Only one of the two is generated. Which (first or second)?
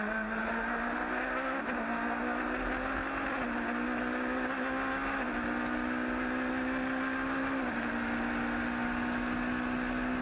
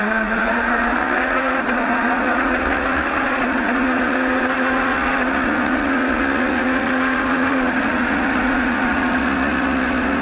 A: second